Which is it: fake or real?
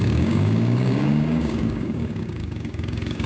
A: fake